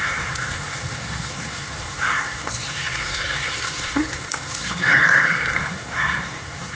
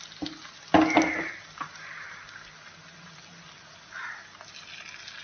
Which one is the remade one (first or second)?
first